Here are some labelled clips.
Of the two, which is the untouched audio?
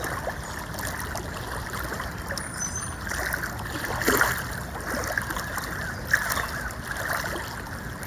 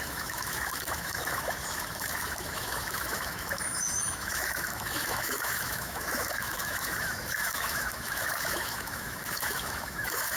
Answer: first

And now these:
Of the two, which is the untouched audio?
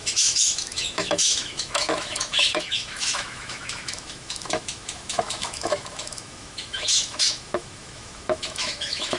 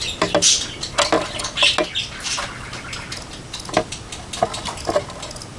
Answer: second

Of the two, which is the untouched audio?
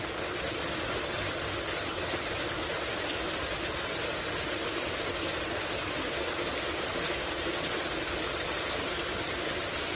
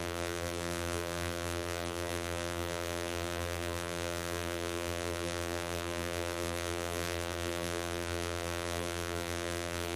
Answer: first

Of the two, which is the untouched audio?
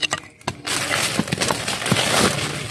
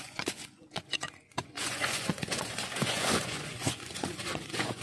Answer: first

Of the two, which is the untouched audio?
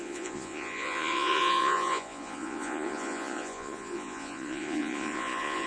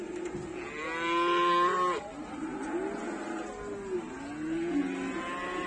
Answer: second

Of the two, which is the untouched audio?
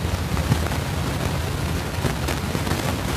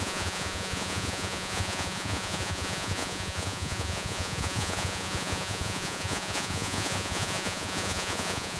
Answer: first